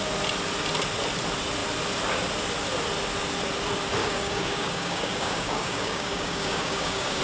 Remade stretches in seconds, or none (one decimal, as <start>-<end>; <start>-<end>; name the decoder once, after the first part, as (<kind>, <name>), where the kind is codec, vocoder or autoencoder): 4.0-7.2 (codec, DAC)